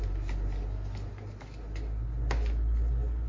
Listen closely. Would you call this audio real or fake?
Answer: real